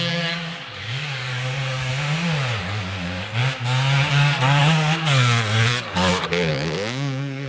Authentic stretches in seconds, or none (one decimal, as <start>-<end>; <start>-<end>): 1.9-2.6; 3.4-4.1